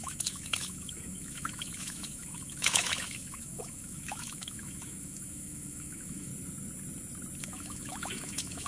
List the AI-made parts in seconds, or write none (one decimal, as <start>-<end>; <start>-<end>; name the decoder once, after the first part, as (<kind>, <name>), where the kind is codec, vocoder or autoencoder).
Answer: 0.0-6.3 (autoencoder, DAC-VAE); 7.4-8.7